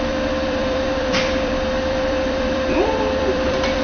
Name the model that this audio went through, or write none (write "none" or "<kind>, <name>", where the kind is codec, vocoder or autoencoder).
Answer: vocoder, BigVGAN v2